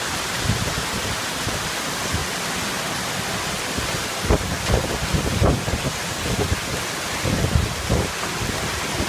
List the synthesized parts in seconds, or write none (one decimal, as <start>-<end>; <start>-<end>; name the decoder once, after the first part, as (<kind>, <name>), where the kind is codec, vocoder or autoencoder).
none